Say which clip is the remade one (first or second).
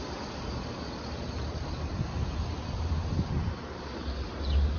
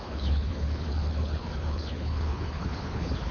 second